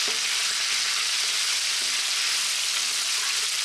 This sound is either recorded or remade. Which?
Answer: recorded